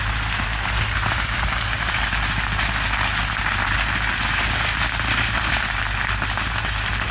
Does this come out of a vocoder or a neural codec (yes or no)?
no